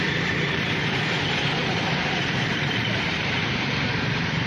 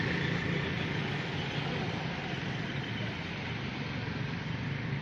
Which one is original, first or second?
second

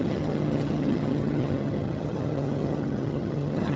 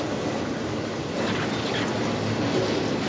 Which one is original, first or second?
second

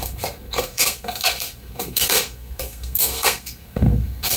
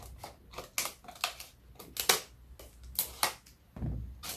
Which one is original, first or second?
second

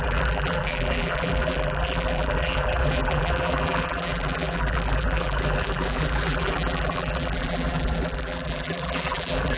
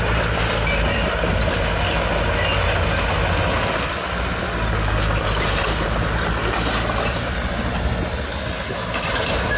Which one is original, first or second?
second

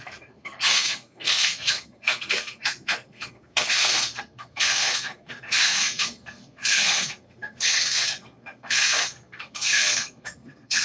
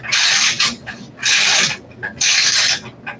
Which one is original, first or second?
second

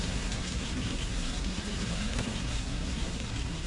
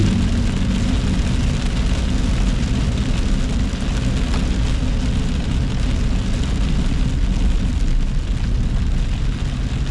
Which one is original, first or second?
second